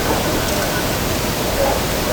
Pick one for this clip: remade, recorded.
recorded